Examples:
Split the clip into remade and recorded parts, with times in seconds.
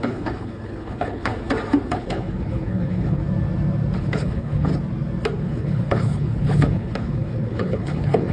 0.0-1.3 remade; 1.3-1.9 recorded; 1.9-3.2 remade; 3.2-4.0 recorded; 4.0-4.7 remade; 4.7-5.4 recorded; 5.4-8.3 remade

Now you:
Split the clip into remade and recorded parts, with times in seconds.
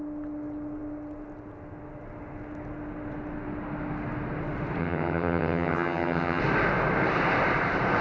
0.0-4.8 recorded; 4.8-6.4 remade; 6.4-8.0 recorded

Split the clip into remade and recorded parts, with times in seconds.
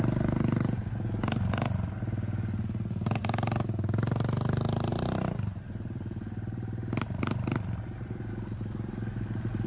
0.0-4.9 recorded; 4.9-8.3 remade; 8.3-9.7 recorded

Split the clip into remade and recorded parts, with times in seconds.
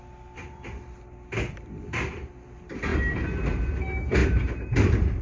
0.0-4.2 recorded; 4.2-5.2 remade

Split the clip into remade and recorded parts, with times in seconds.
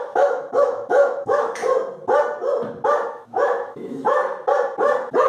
0.0-1.6 remade; 1.6-3.1 recorded; 3.1-4.2 remade; 4.2-5.3 recorded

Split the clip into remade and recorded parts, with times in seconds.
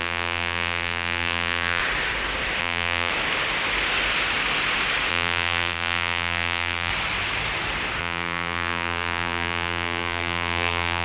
0.0-1.8 remade; 1.8-2.6 recorded; 2.6-3.1 remade; 3.1-5.1 recorded; 5.1-6.9 remade; 6.9-8.0 recorded; 8.0-11.0 remade